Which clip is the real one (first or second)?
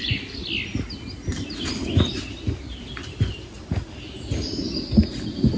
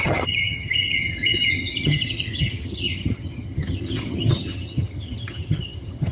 first